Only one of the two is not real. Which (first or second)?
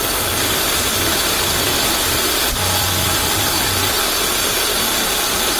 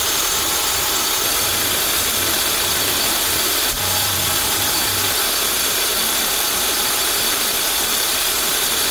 second